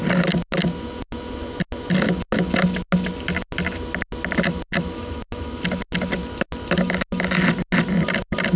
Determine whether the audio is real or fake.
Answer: real